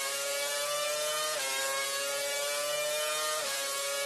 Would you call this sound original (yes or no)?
yes